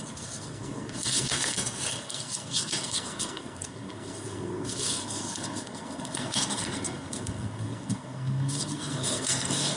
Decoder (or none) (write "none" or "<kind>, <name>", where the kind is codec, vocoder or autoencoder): codec, SNAC